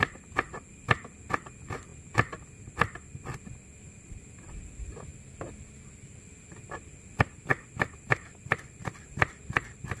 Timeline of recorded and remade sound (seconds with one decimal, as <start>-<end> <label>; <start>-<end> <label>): 0.0-7.5 recorded; 7.5-10.0 remade